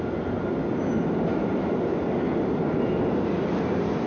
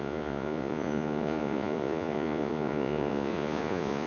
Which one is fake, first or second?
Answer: second